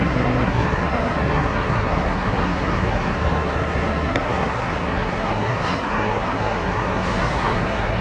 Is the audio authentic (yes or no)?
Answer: no